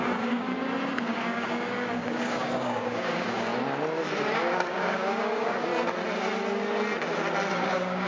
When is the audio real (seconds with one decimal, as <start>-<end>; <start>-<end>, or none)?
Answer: 0.5-1.0; 3.5-4.4; 5.7-7.5